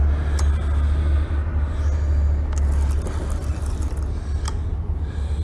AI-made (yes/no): no